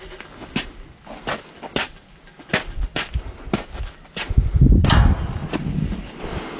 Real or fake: real